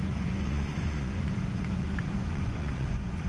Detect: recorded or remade remade